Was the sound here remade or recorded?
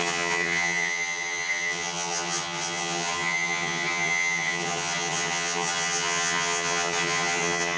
remade